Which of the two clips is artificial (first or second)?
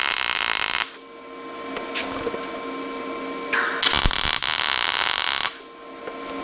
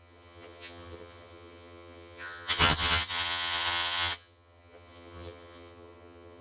second